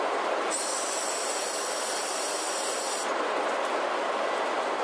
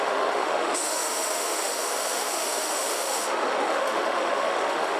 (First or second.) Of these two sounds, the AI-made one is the second